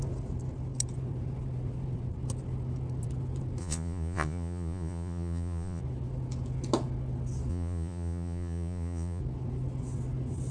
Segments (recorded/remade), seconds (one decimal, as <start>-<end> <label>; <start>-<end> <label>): 0.0-3.6 recorded; 3.6-5.8 remade; 5.8-7.5 recorded; 7.5-9.2 remade; 9.2-10.5 recorded